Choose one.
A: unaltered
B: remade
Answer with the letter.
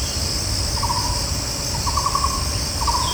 A